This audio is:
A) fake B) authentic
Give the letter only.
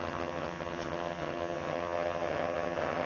A